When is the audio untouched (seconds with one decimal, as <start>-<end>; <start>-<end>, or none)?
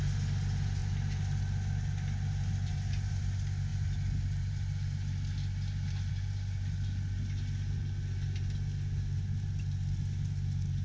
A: 0.0-10.8